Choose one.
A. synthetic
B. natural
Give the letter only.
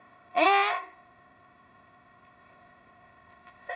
A